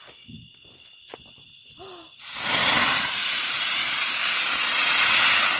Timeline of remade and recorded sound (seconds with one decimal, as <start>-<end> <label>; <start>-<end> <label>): 0.0-2.6 recorded; 2.6-4.2 remade; 4.2-5.6 recorded

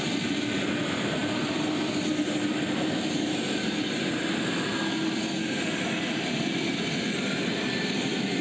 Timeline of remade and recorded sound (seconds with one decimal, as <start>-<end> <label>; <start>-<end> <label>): 0.0-8.4 recorded

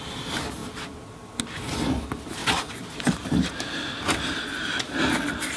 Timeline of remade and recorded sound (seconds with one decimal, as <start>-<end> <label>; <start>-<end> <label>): 0.0-5.6 recorded

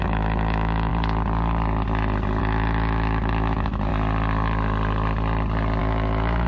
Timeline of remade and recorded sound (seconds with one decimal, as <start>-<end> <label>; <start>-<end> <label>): 0.0-0.9 remade; 0.9-2.4 recorded; 2.4-3.9 remade; 3.9-5.8 recorded; 5.8-6.5 remade

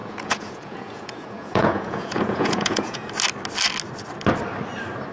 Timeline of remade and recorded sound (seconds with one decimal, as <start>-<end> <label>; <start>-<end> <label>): 0.0-3.1 remade; 3.1-5.1 recorded